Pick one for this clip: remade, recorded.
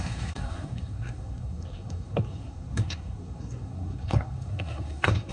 remade